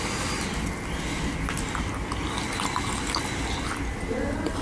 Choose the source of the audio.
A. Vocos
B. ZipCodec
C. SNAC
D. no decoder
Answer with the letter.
D